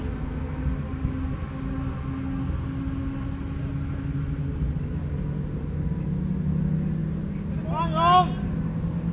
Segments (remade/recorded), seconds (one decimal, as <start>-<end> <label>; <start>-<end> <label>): 0.0-9.1 recorded